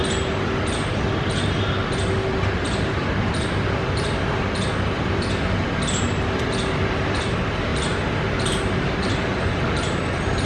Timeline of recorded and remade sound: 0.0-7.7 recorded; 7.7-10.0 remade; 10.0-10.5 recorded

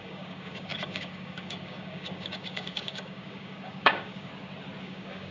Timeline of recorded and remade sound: 0.0-4.3 remade; 4.3-4.8 recorded; 4.8-5.3 remade

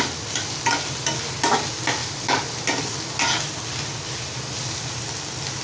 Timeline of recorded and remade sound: 0.0-5.6 recorded

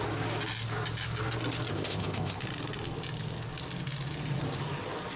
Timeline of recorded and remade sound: 0.0-1.7 recorded; 1.7-2.4 remade; 2.4-5.2 recorded